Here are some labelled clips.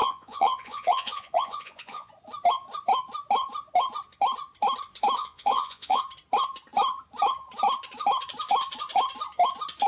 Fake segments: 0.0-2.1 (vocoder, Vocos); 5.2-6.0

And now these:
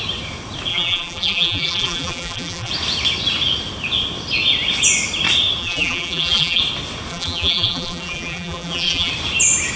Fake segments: 0.7-2.7 (vocoder, BigVGAN v2); 5.6-6.6; 7.1-9.1

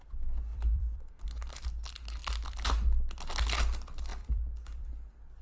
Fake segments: 0.5-1.1 (vocoder, BigVGAN v2); 4.1-5.4

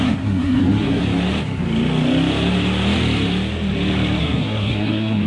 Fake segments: 0.0-1.0 (codec, SNAC); 4.2-5.3

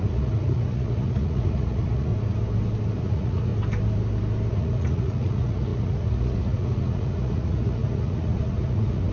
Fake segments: 0.0-2.1 (vocoder, Vocos); 3.0-3.5; 4.5-9.1

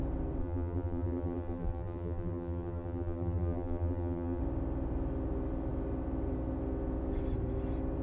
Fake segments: 0.4-4.4 (vocoder, BigVGAN v2)